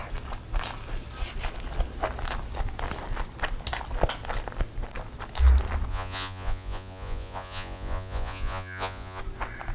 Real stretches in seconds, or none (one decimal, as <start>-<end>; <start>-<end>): 0.0-5.9; 9.2-9.7